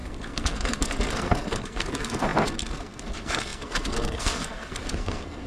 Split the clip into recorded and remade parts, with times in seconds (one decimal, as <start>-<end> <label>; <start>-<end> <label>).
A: 0.0-5.5 remade